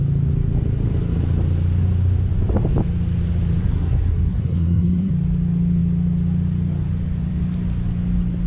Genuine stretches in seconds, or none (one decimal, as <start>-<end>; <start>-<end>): 0.0-3.6; 5.1-8.5